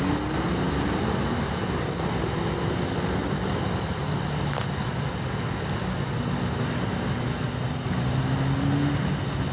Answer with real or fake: real